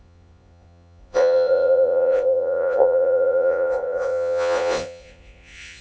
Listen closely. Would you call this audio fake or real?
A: fake